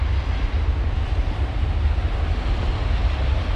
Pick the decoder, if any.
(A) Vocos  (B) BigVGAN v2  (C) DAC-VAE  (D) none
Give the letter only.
D